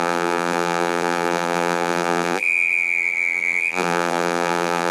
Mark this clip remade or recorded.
remade